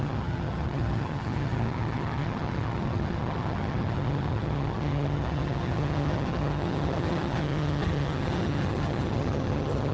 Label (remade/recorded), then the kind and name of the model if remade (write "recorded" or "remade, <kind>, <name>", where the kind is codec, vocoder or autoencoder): remade, vocoder, HiFi-GAN